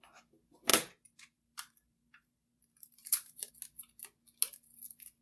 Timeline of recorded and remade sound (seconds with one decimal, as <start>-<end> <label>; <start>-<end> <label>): 0.0-0.7 recorded; 0.7-3.5 remade; 3.5-5.2 recorded